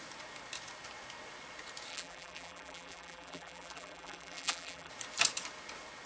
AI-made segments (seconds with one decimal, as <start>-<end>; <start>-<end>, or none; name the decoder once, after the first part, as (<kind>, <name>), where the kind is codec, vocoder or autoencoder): 1.9-4.9 (vocoder, BigVGAN v2)